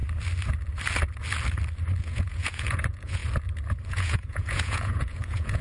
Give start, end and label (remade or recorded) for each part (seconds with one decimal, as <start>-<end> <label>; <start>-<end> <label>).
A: 0.0-2.0 recorded; 2.0-3.2 remade; 3.2-3.9 recorded; 3.9-5.6 remade